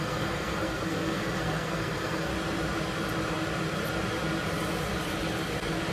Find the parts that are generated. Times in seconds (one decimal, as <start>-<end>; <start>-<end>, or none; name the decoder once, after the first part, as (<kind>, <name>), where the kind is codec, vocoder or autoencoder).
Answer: 0.0-2.3 (codec, SNAC)